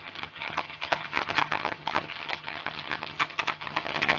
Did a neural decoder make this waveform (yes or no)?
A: yes